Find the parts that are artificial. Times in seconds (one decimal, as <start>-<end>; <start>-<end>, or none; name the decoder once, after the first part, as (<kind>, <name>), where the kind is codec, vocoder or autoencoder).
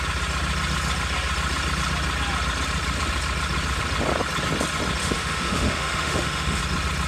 5.0-6.6 (autoencoder, DAC-VAE)